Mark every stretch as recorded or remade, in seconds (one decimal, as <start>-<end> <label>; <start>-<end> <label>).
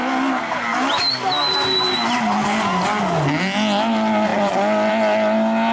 0.0-5.7 recorded